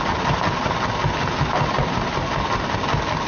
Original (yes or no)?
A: yes